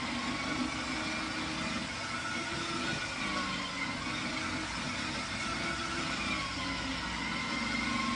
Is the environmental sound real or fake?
real